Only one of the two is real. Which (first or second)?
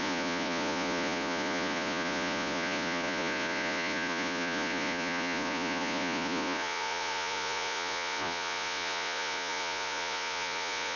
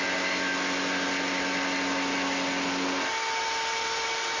second